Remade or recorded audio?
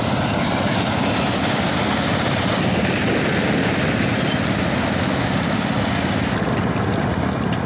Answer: recorded